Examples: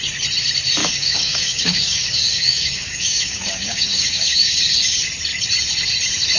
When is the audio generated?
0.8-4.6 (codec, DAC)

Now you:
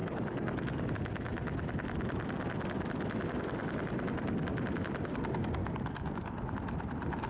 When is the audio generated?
0.0-0.9 (codec, DAC); 5.6-6.5

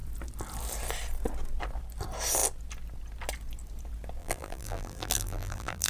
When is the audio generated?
4.2-5.9 (vocoder, BigVGAN v2)

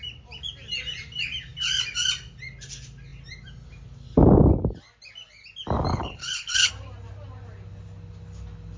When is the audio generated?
5.9-6.7 (codec, HILCodec)

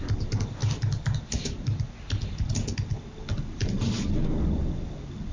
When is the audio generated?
none